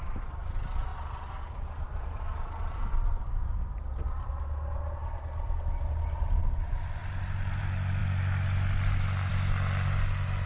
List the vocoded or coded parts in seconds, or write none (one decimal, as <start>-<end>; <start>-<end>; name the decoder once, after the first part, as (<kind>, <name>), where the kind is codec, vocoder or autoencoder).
none